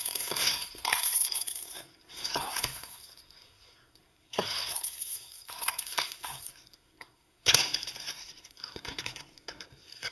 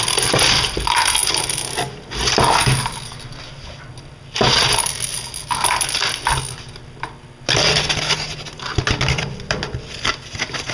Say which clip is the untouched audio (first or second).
second